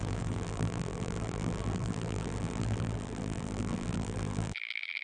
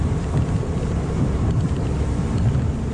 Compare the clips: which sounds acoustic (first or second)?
second